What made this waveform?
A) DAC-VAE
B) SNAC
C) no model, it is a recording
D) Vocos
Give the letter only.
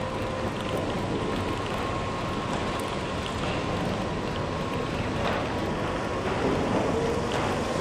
C